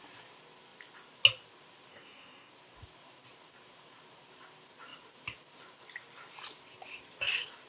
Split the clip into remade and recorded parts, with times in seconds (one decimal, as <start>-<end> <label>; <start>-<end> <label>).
0.0-1.9 recorded; 1.9-2.5 remade; 2.5-7.7 recorded